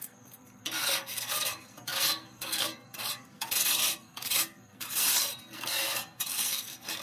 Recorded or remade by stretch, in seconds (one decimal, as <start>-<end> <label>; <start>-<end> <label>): 0.0-7.0 remade